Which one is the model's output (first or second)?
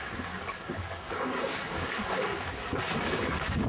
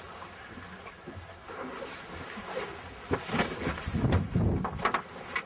first